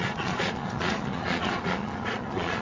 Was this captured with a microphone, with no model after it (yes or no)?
no